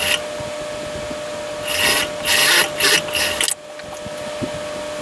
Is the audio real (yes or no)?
yes